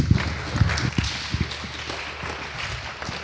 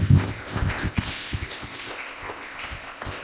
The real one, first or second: first